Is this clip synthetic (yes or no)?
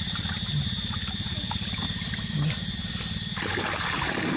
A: no